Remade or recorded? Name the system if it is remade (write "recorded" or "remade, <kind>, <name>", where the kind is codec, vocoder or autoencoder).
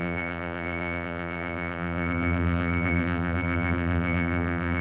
remade, vocoder, BigVGAN v2